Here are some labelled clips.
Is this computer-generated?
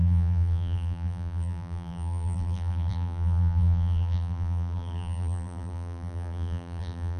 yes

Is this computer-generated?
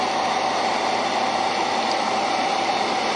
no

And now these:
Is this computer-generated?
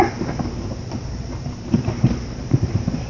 yes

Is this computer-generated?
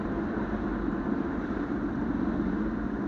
no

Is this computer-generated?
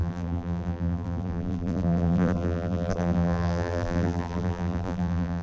yes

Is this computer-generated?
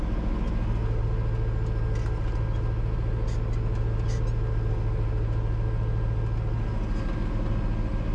no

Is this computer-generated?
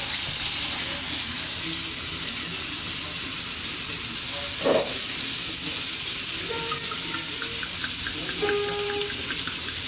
no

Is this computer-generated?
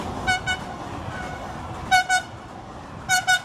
no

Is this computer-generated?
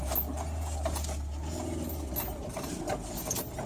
no